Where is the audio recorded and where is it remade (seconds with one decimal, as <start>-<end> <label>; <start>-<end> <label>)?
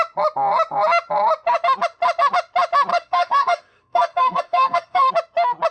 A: 0.0-2.9 recorded; 2.9-5.1 remade; 5.1-5.7 recorded